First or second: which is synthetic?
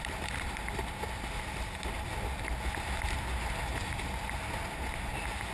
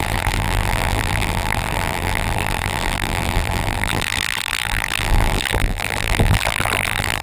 second